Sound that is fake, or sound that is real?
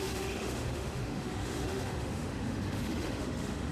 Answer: fake